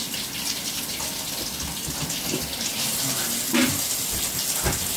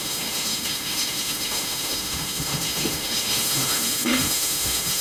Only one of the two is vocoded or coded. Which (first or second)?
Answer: second